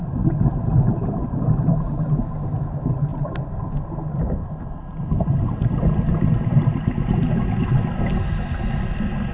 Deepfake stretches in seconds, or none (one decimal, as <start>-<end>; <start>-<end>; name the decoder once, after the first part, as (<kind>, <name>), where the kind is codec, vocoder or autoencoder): 1.2-1.8 (vocoder, BigVGAN v2); 3.1-7.4